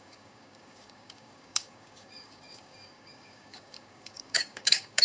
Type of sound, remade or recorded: remade